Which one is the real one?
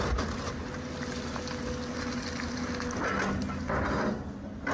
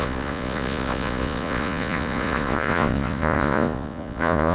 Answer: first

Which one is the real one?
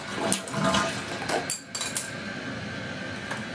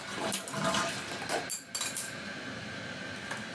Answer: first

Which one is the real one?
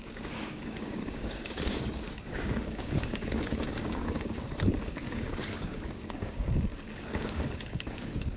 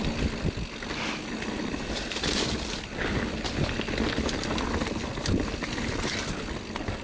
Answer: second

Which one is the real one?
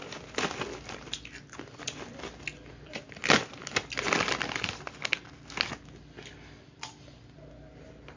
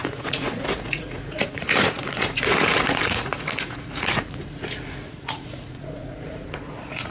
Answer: first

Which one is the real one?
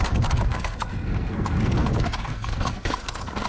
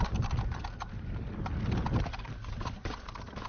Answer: second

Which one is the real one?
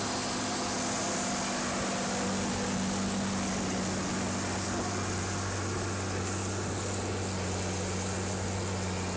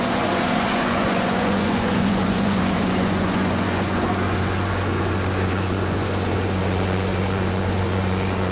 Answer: first